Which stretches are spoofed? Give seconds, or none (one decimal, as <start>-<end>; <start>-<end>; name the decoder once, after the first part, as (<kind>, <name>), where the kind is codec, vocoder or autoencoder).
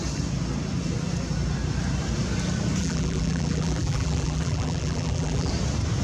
2.8-5.5 (vocoder, BigVGAN v2)